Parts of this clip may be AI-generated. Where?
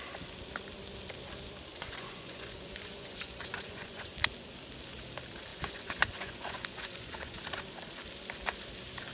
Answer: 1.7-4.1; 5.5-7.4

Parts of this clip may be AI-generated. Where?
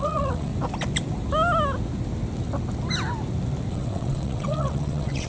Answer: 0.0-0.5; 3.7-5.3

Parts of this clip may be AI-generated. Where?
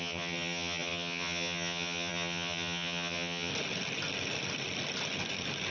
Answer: 0.0-3.5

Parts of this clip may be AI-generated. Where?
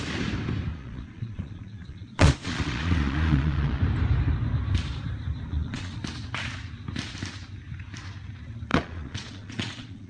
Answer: 0.7-3.8; 5.5-6.0; 8.7-10.1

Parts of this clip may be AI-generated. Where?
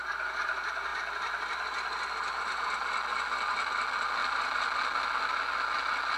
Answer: none